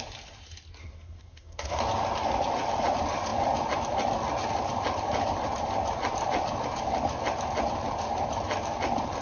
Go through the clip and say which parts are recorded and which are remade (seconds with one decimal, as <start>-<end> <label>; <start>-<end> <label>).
0.0-0.8 recorded; 0.8-1.8 remade; 1.8-9.2 recorded

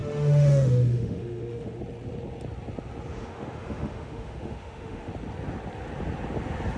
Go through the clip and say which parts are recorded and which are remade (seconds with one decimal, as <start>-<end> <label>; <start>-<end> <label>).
0.0-1.8 remade; 1.8-3.1 recorded; 3.1-5.1 remade; 5.1-6.8 recorded

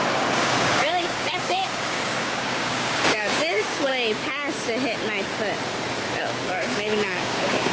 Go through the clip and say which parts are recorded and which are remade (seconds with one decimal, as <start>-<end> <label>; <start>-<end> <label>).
0.0-3.9 remade; 3.9-6.2 recorded; 6.2-7.7 remade

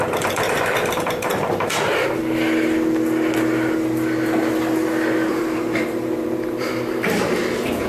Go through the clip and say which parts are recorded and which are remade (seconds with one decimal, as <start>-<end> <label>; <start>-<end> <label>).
0.0-2.2 remade; 2.2-5.3 recorded; 5.3-7.9 remade

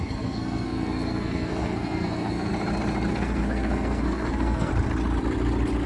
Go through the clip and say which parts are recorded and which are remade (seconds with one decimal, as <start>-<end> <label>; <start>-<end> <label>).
0.0-2.5 remade; 2.5-3.1 recorded; 3.1-4.7 remade; 4.7-5.9 recorded

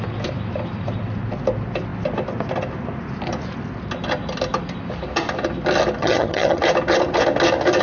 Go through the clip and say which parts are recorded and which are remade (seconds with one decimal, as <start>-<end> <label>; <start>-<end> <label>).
0.0-6.0 recorded; 6.0-6.6 remade; 6.6-7.8 recorded